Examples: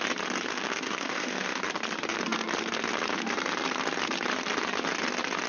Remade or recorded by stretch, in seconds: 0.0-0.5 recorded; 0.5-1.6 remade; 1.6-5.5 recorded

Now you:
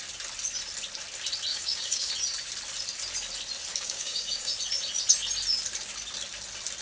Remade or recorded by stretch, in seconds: 0.0-1.5 recorded; 1.5-2.1 remade; 2.1-3.7 recorded; 3.7-4.5 remade; 4.5-6.8 recorded

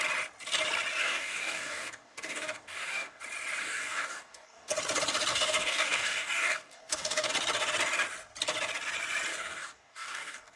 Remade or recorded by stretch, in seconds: 0.0-1.0 recorded; 1.0-3.2 remade; 3.2-3.6 recorded; 3.6-4.7 remade; 4.7-5.3 recorded; 5.3-7.3 remade; 7.3-9.3 recorded; 9.3-10.6 remade

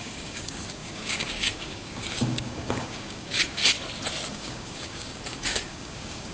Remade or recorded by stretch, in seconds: 0.0-3.6 remade; 3.6-4.3 recorded; 4.3-6.3 remade

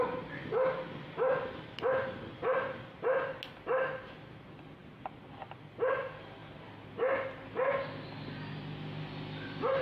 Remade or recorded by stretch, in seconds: 0.0-9.8 recorded

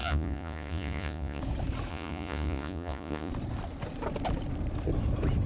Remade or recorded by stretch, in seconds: 0.0-1.4 remade; 1.4-1.9 recorded; 1.9-3.3 remade; 3.3-5.5 recorded